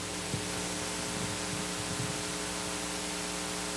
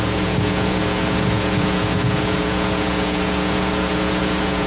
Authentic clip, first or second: first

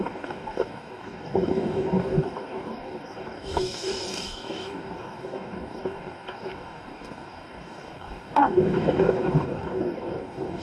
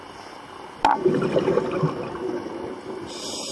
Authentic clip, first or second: second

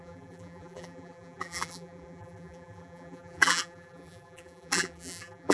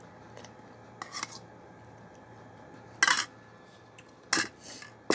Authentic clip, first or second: second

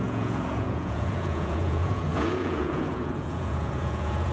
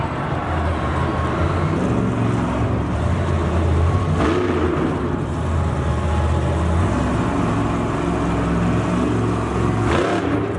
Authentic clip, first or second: second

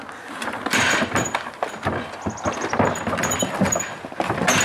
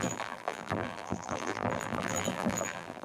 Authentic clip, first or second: first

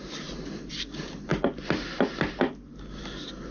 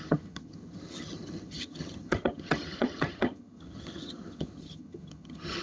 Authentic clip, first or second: first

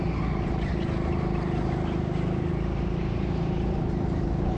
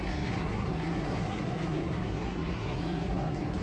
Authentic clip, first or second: first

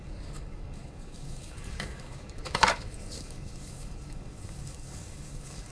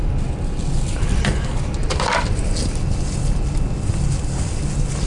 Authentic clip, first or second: second